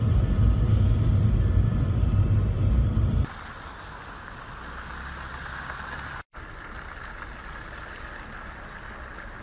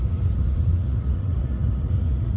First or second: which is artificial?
second